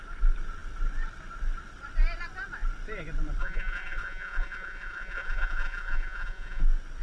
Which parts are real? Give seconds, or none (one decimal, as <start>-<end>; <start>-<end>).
0.0-3.4; 6.6-7.0